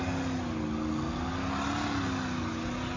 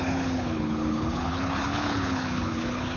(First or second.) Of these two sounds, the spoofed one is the second